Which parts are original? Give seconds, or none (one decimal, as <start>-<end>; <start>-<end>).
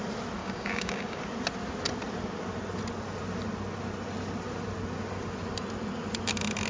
0.0-0.4; 1.2-6.7